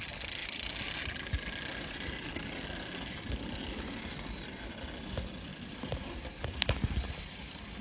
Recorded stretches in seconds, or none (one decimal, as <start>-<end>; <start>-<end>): 0.0-0.4; 4.6-5.5; 7.2-7.8